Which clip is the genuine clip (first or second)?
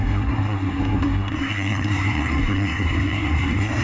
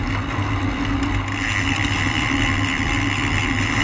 second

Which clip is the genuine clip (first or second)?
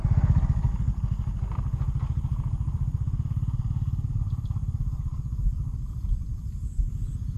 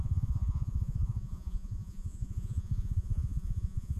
first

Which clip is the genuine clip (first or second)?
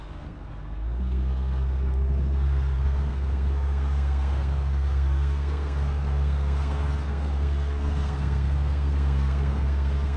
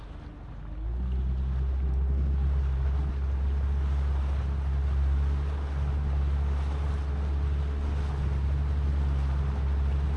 second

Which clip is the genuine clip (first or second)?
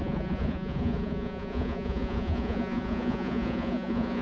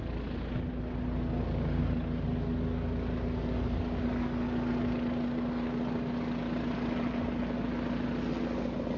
second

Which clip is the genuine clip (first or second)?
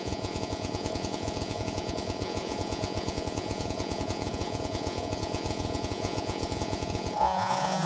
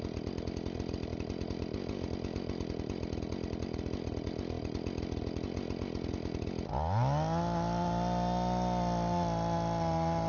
second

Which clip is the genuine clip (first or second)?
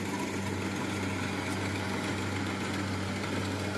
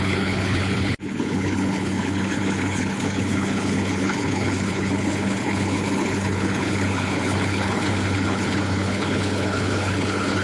first